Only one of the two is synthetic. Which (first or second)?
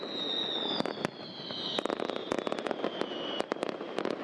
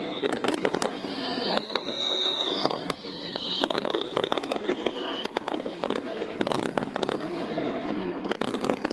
second